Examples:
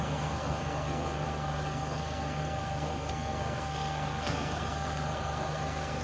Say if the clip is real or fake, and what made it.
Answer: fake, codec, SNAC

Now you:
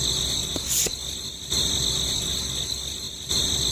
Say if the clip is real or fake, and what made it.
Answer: real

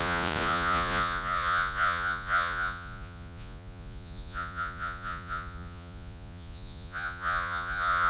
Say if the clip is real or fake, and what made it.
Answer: fake, vocoder, Vocos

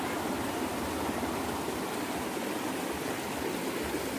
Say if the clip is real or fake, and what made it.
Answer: real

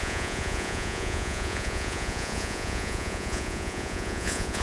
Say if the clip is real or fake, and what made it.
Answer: fake, vocoder, Vocos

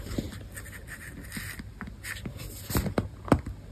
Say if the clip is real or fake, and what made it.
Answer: real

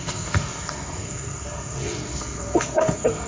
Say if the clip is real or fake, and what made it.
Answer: fake, codec, SNAC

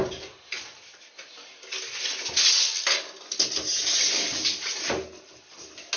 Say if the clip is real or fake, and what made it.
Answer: real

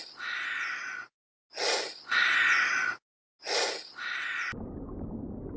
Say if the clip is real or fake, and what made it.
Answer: real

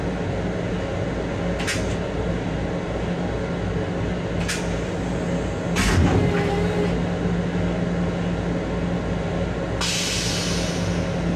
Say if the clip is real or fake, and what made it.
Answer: real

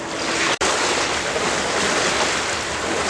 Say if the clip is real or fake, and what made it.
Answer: real